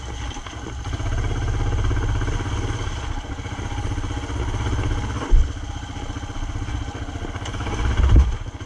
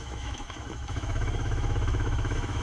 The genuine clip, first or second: first